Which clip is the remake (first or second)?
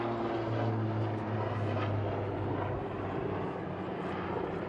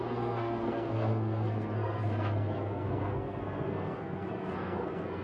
second